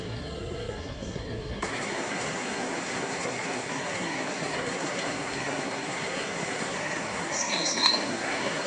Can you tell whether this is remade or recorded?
remade